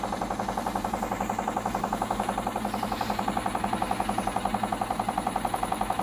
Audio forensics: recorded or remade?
recorded